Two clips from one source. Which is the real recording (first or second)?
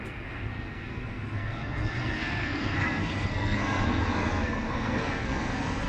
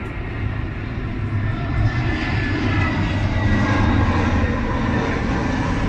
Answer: second